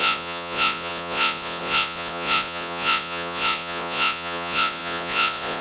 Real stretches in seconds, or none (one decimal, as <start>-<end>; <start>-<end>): none